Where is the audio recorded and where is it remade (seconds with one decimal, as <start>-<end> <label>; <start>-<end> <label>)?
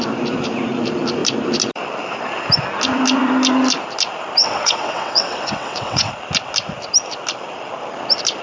0.0-4.4 recorded; 4.4-6.1 remade; 6.1-8.4 recorded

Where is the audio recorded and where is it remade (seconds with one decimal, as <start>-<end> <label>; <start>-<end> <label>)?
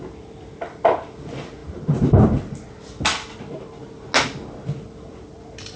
0.0-5.8 recorded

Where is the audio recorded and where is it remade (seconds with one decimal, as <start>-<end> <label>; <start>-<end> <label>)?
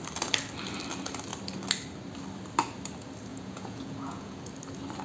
0.0-3.3 recorded; 3.3-4.4 remade; 4.4-5.0 recorded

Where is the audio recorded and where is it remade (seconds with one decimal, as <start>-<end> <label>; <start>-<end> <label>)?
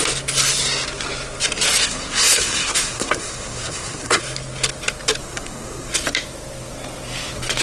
0.0-1.8 recorded; 1.8-4.2 remade; 4.2-5.2 recorded; 5.2-5.9 remade; 5.9-7.6 recorded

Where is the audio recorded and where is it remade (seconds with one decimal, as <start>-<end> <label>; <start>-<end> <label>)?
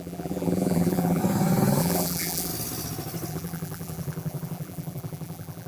0.0-1.2 remade; 1.2-1.8 recorded; 1.8-2.5 remade; 2.5-3.3 recorded; 3.3-5.7 remade